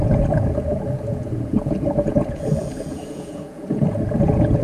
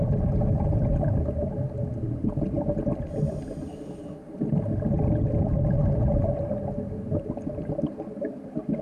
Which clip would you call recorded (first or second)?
second